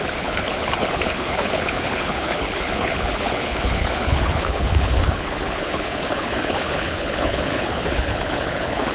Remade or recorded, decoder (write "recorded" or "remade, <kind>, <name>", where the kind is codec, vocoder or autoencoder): remade, codec, HILCodec